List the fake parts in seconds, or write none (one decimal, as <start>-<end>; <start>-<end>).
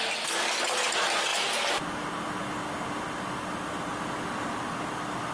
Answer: none